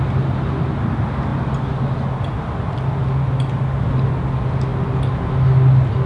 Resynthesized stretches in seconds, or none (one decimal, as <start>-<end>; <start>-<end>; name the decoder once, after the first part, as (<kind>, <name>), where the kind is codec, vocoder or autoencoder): none